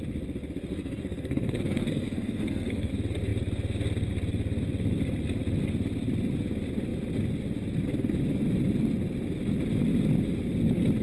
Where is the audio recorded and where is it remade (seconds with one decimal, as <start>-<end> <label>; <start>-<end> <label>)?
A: 0.0-0.7 recorded; 0.7-2.9 remade; 2.9-11.0 recorded